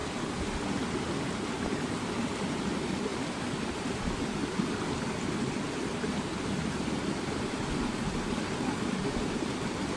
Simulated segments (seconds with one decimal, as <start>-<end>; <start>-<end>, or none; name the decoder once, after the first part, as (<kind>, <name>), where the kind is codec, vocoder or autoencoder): 0.0-0.6 (vocoder, BigVGAN v2); 3.1-3.7; 4.4-5.0